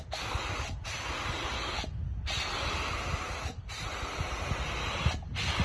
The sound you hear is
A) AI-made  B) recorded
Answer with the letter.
B